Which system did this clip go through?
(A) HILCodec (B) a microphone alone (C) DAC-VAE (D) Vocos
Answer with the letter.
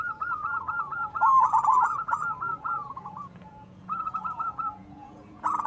D